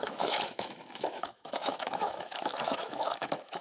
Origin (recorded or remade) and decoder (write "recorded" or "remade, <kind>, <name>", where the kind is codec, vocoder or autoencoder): remade, autoencoder, DAC-VAE